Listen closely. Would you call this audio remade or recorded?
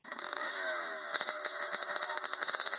remade